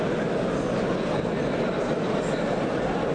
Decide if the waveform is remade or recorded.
recorded